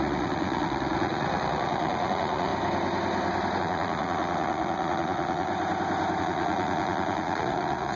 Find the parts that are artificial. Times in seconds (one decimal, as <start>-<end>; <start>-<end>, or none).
0.0-2.5; 3.6-5.5; 6.2-8.0